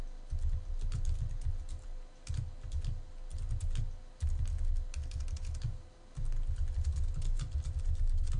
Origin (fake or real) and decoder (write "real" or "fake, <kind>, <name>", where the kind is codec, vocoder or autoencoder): real